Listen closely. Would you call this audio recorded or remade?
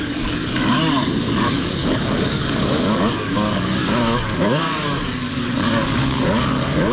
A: remade